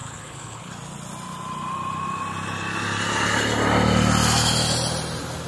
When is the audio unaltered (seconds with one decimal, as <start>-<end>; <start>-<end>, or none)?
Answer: 0.7-5.5